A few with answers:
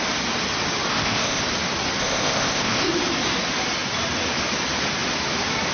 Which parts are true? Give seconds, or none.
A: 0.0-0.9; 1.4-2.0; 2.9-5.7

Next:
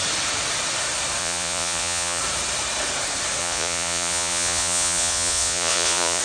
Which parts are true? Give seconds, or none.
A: 0.0-1.2; 2.2-3.4

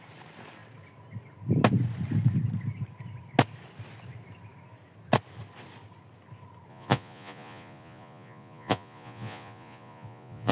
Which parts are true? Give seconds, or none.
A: 0.0-6.7

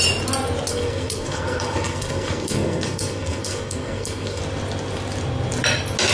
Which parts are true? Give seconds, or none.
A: 0.0-0.7; 4.4-6.1

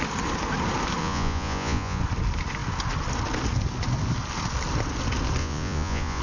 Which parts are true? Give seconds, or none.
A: 0.0-1.0; 2.0-5.4

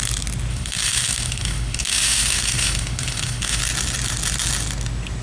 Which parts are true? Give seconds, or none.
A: 0.0-0.5; 3.6-5.2

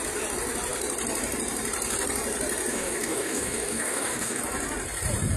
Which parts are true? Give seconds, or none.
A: 0.0-2.7; 4.4-5.4

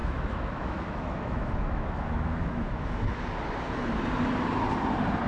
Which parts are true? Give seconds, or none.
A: 3.2-5.3